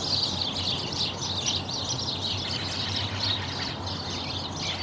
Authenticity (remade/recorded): recorded